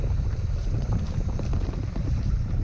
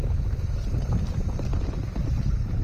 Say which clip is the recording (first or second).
second